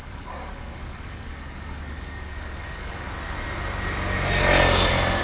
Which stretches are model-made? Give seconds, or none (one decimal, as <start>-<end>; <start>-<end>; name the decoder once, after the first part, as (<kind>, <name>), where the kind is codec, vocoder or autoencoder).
0.0-3.1 (codec, DAC)